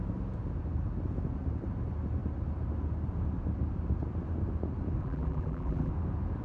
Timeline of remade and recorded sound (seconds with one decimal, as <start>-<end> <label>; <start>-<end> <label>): 0.0-5.0 recorded; 5.0-5.9 remade; 5.9-6.4 recorded